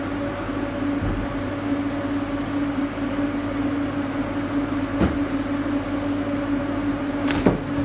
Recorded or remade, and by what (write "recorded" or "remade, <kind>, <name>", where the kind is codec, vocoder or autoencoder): recorded